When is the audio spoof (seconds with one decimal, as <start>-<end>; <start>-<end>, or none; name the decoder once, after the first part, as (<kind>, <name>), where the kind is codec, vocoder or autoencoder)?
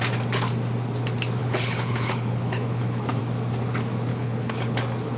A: 1.4-3.2 (codec, HILCodec); 4.1-4.8